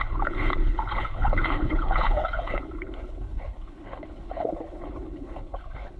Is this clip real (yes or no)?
no